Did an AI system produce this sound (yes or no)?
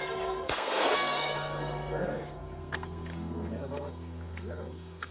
yes